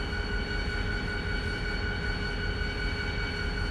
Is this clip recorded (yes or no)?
yes